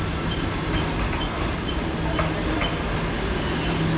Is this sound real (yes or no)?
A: yes